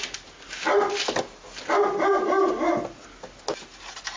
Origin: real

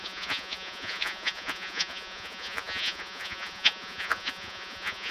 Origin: fake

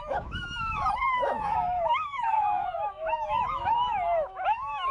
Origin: fake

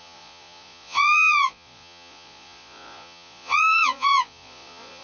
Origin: fake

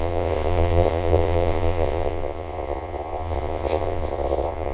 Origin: fake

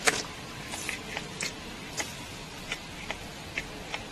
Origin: real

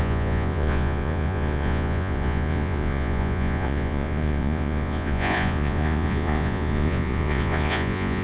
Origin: fake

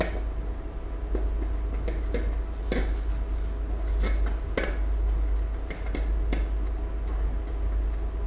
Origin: real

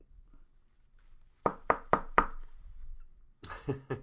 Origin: real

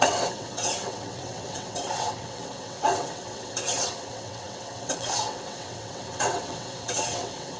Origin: fake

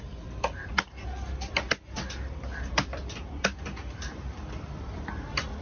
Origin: fake